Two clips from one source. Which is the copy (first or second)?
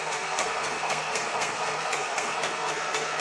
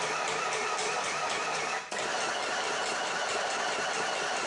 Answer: first